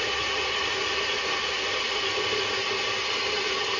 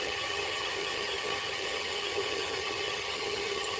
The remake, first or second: second